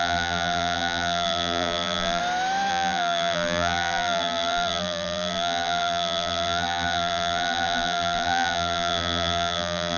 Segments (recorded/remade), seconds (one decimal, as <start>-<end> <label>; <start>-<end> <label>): 0.0-2.2 remade; 2.2-2.7 recorded; 2.7-10.0 remade